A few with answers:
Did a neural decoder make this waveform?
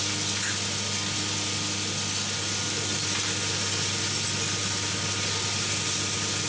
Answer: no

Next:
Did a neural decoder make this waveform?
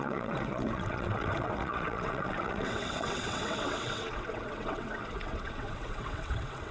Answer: yes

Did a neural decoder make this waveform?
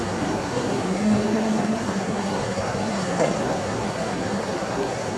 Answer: yes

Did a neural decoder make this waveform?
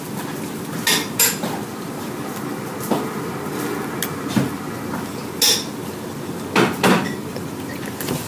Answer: no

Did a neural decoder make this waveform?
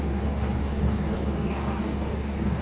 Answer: yes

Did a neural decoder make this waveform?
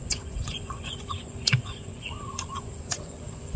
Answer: yes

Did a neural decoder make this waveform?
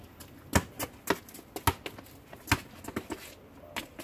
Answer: no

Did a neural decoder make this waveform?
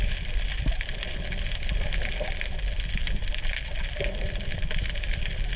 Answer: no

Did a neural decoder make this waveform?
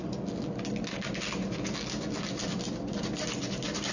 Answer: no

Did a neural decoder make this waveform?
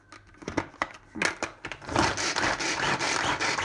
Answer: no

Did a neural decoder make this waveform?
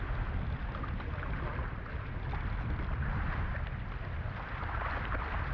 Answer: no